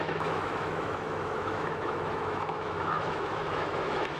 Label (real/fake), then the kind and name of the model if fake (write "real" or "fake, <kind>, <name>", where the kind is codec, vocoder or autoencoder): fake, autoencoder, DAC-VAE